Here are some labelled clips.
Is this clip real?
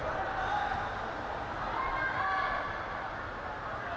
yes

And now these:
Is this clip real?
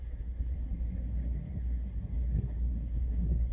no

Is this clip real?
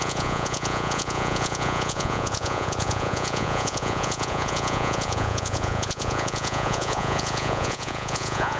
no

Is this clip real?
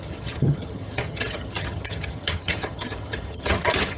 no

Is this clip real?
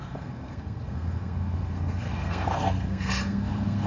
no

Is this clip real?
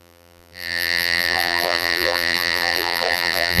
no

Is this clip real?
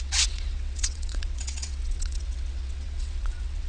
no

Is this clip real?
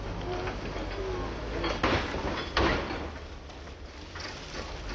yes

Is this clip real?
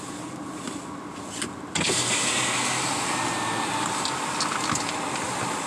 yes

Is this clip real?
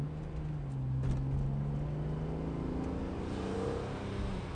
yes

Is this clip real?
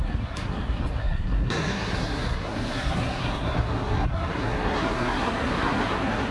no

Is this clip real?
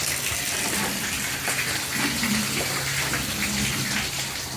yes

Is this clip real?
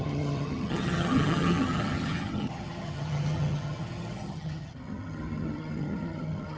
no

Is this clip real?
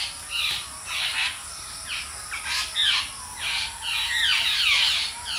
yes